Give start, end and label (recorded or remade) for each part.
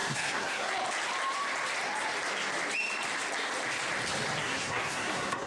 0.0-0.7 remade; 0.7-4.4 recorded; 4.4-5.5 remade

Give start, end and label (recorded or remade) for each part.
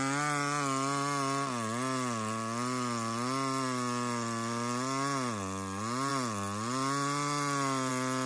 0.0-8.3 recorded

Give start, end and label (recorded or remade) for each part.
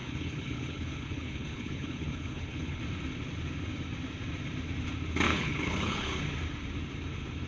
0.0-2.8 remade; 2.8-5.3 recorded; 5.3-6.2 remade; 6.2-7.5 recorded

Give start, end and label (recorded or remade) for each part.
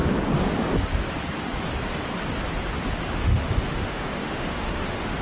0.0-3.1 recorded; 3.1-5.2 remade